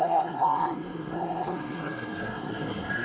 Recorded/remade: remade